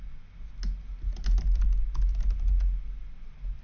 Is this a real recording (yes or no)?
yes